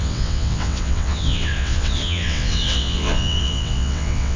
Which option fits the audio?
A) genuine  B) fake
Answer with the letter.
B